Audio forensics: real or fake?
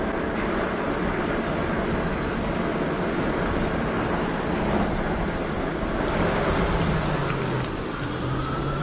real